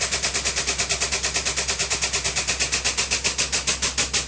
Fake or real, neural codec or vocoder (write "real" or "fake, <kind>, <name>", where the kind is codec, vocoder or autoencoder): real